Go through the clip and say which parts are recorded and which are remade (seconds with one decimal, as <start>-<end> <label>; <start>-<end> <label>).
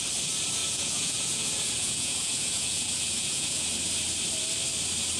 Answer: 0.0-0.6 recorded; 0.6-3.7 remade; 3.7-5.2 recorded